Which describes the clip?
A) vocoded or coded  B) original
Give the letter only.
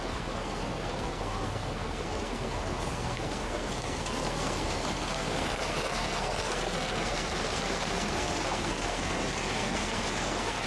A